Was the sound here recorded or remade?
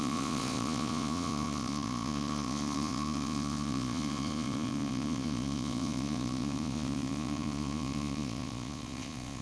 remade